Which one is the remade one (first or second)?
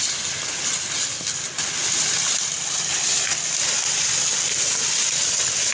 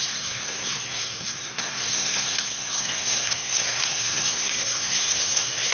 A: second